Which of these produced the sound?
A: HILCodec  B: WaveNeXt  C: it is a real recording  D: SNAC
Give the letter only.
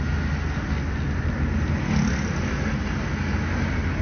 C